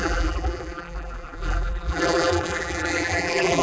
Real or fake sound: fake